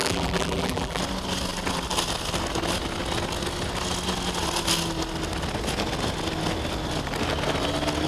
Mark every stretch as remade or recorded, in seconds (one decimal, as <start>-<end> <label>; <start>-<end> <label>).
0.0-1.0 remade; 1.0-8.1 recorded